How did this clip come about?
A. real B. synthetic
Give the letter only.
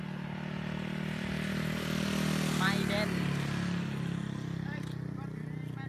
A